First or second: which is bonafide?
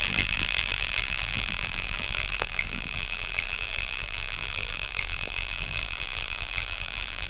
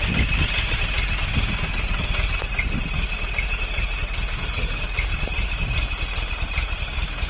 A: second